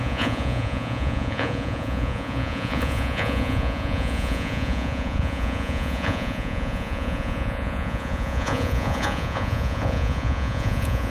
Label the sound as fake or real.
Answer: fake